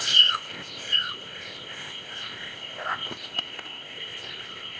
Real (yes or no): no